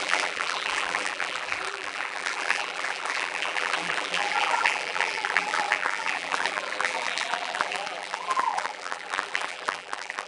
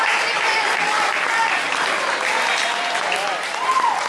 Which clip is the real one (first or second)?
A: second